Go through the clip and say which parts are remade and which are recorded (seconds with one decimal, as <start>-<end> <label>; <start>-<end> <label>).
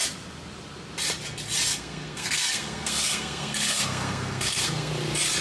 0.0-1.7 recorded; 1.7-4.9 remade; 4.9-5.4 recorded